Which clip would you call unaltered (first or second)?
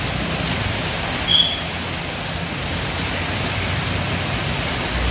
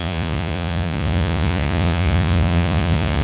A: first